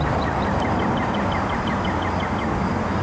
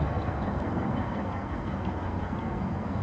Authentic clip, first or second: first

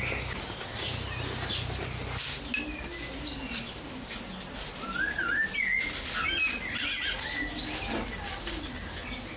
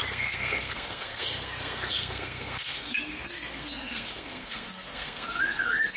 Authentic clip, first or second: first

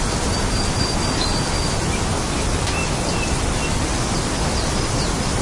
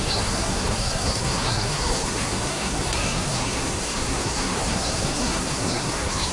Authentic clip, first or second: first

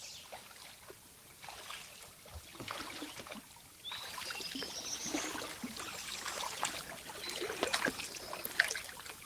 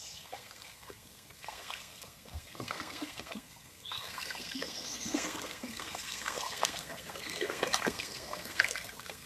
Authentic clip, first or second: first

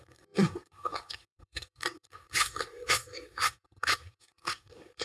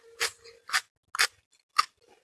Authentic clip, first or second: second